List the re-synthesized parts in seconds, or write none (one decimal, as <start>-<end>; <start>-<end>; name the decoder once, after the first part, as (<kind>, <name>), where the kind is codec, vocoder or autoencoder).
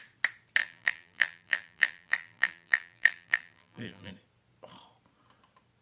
0.6-4.1 (vocoder, BigVGAN v2)